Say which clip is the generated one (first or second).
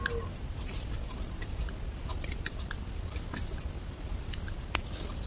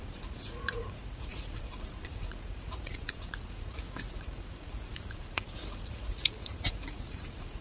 second